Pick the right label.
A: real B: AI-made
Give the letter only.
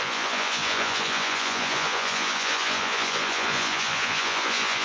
B